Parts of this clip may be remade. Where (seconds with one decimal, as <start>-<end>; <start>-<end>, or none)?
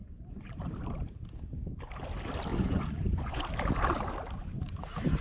0.0-0.5; 2.5-3.5